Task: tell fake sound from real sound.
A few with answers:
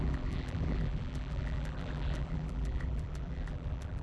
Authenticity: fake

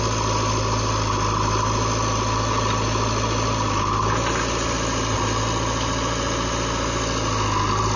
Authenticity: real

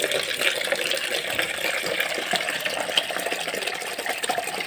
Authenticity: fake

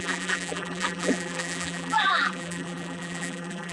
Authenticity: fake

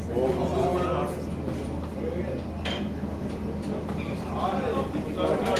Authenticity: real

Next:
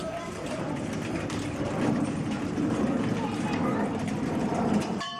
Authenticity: fake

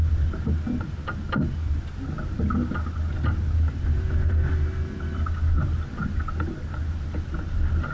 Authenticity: real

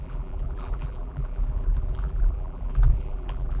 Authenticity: fake